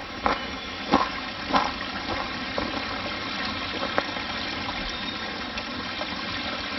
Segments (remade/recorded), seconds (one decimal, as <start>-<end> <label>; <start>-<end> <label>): 0.0-1.3 remade; 1.3-6.8 recorded